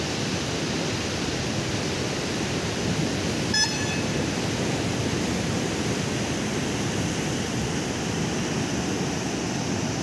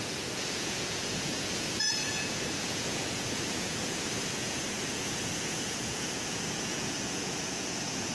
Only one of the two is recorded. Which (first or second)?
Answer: first